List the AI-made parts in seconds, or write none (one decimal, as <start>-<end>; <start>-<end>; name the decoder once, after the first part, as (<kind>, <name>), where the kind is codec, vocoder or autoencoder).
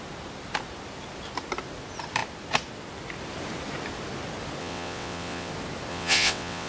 4.6-5.5 (vocoder, WaveNeXt); 5.9-6.7